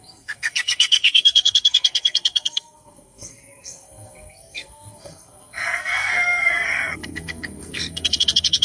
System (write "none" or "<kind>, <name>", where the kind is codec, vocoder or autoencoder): codec, SNAC